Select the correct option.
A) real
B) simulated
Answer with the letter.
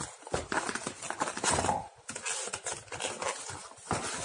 A